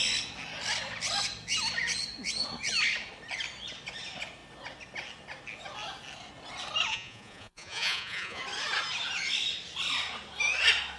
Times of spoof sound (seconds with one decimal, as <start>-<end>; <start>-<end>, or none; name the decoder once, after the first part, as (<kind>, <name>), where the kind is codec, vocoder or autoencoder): 6.9-8.4 (vocoder, Vocos)